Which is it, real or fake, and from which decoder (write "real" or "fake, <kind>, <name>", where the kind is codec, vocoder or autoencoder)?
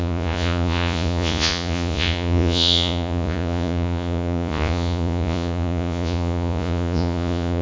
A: fake, vocoder, Vocos